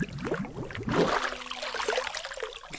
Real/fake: real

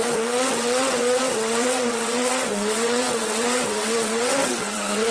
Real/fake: fake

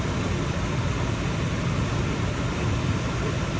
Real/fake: real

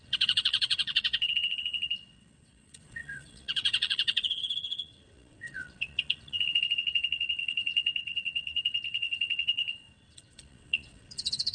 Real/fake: fake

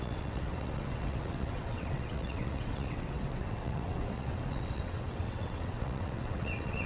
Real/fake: fake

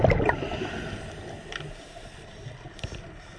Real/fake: real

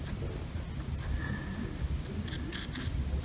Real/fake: real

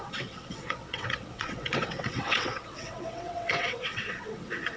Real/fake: fake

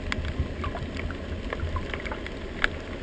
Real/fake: real